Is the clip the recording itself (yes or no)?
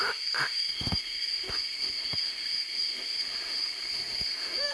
no